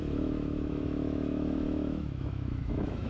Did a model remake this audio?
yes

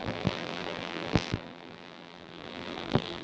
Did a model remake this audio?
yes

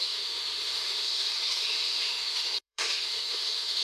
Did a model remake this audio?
yes